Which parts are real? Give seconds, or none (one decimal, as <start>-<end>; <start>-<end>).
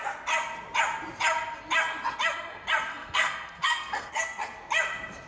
0.0-2.9; 4.1-5.3